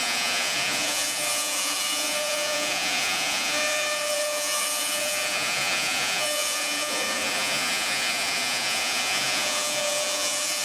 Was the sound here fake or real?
fake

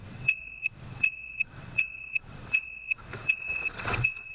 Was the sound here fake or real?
fake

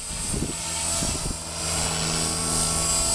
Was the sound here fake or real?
real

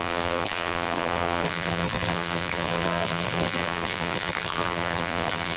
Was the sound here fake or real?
fake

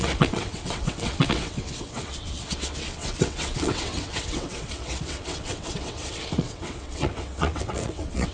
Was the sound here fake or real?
fake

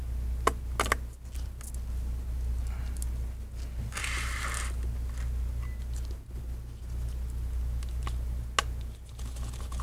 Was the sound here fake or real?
real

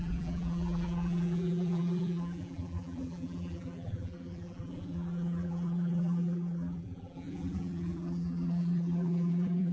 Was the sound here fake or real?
fake